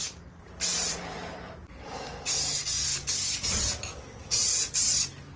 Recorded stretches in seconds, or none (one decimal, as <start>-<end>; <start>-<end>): 2.5-2.9